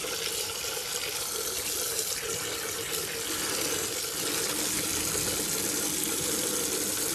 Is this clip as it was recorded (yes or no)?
yes